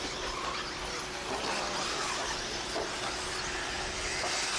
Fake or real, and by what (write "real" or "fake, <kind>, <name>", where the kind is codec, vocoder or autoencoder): real